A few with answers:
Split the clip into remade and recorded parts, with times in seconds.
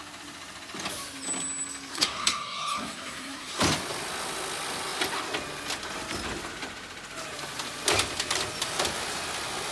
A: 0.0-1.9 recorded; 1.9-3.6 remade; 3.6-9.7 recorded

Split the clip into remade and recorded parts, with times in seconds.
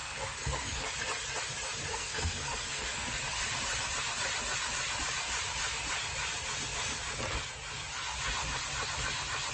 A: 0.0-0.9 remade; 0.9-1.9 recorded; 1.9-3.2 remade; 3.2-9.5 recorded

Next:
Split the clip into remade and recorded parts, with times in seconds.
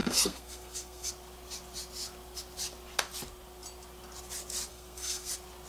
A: 0.0-1.1 remade; 1.1-4.7 recorded; 4.7-5.3 remade; 5.3-5.7 recorded